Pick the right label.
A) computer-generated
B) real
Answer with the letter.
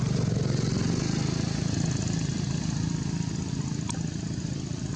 B